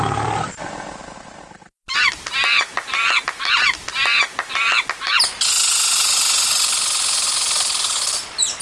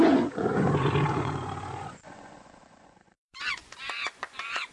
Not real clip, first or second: second